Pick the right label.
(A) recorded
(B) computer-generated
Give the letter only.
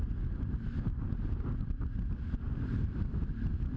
A